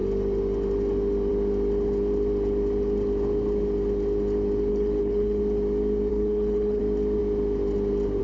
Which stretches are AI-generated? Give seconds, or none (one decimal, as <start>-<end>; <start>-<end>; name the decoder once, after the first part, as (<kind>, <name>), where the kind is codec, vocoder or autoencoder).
4.7-5.4 (codec, HILCodec); 6.1-6.8